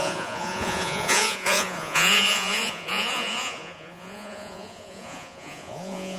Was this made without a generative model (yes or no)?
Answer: no